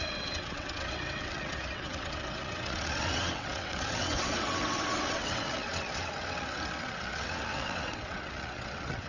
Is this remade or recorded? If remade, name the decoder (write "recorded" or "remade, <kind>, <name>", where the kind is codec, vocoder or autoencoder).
remade, vocoder, WaveNeXt